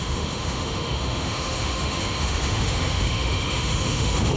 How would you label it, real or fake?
fake